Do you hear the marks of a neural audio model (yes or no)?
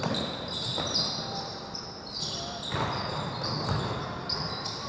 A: no